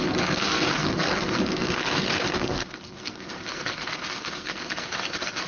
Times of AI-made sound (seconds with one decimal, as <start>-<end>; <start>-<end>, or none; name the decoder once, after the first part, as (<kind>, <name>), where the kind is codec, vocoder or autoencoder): 0.0-5.5 (codec, SNAC)